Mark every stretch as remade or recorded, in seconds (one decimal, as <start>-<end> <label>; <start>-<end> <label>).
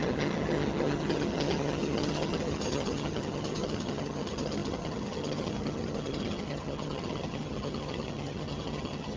0.0-9.2 remade